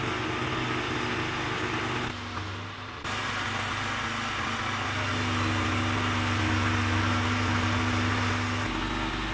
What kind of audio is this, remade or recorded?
recorded